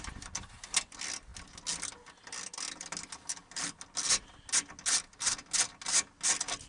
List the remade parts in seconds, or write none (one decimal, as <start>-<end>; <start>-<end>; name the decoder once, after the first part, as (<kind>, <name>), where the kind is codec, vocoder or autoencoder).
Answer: none